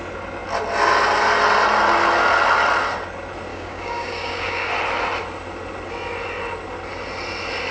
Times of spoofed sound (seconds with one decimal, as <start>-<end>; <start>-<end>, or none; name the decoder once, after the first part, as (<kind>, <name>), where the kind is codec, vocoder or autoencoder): 3.5-4.7 (codec, DAC)